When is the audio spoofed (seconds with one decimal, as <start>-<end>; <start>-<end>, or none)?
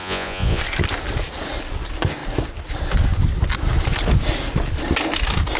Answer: 0.0-0.6